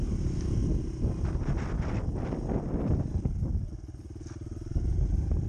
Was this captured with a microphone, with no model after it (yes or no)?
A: yes